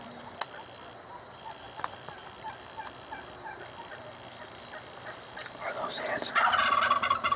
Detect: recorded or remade recorded